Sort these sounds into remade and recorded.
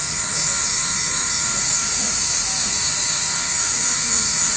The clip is remade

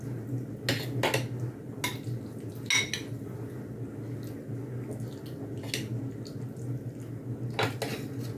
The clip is recorded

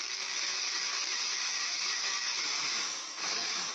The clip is remade